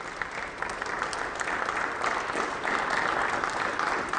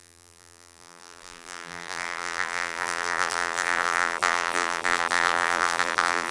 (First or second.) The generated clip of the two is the second